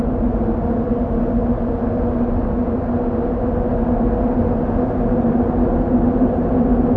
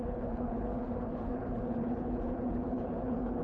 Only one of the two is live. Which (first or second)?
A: first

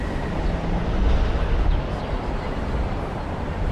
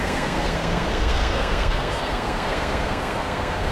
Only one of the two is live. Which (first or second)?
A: first